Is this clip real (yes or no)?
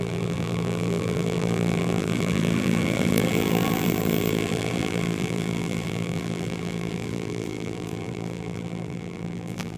no